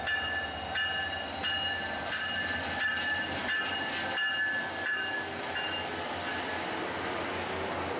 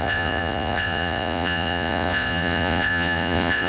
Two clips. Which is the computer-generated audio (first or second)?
second